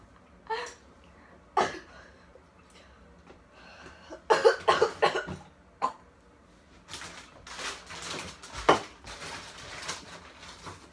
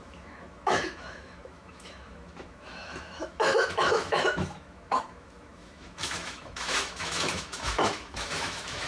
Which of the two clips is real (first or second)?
first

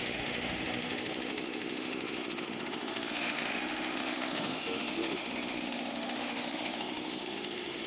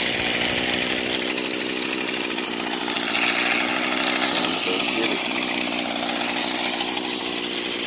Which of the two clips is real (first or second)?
second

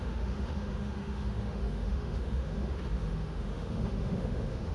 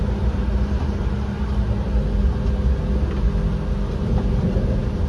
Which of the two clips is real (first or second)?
second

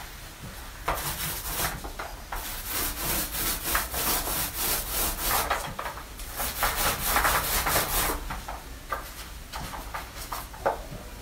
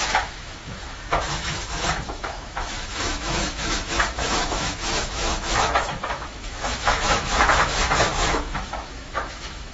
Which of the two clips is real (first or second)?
first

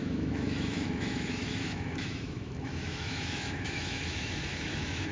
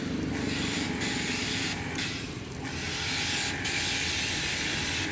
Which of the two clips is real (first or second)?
second